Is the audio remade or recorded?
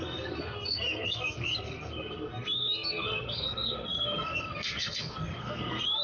remade